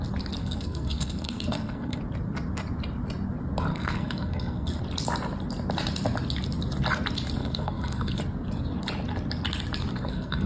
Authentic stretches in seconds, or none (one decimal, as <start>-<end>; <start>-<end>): 0.0-0.4; 2.0-3.7; 4.8-7.4; 8.2-9.9